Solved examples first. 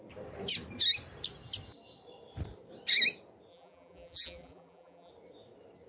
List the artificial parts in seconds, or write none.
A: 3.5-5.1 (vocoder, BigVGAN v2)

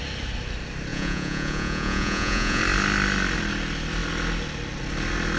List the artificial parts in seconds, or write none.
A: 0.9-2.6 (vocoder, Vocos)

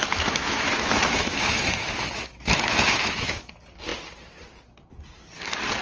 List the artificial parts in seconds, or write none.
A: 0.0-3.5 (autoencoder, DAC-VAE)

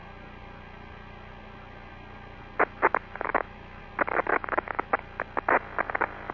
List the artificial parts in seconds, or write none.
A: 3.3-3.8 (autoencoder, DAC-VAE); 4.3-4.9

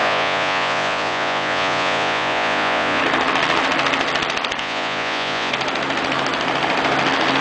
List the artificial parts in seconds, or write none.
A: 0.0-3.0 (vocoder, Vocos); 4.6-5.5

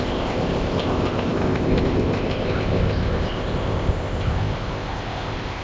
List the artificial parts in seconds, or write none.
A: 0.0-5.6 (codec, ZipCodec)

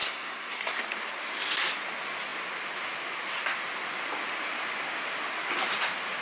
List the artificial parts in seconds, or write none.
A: 0.0-0.8 (codec, SNAC)

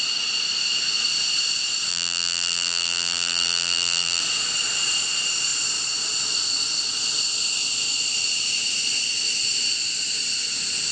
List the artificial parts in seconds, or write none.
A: 1.9-4.2 (vocoder, BigVGAN v2)